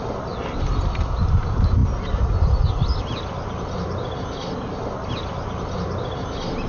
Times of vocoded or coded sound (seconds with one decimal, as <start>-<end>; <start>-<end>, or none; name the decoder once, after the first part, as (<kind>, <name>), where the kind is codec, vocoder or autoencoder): none